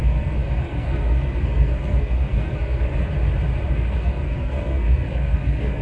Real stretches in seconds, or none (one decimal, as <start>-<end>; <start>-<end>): 3.1-3.7